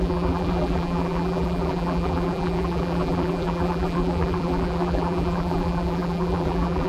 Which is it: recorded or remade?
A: remade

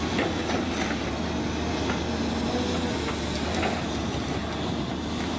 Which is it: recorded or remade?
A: recorded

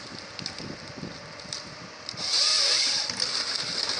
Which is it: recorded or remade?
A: remade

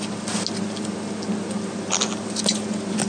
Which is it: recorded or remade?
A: recorded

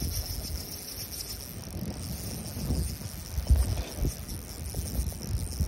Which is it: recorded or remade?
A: recorded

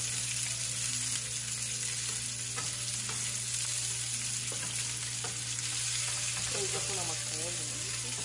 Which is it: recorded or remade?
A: recorded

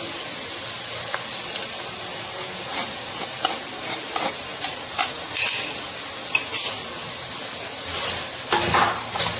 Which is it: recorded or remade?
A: recorded